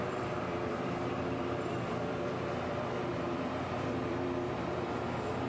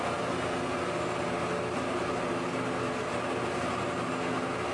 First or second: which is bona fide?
second